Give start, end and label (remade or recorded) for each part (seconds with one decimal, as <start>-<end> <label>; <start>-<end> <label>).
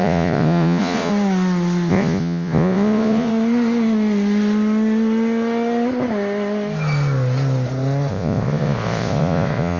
0.0-1.1 remade; 1.1-1.9 recorded; 1.9-3.3 remade; 3.3-8.1 recorded; 8.1-9.8 remade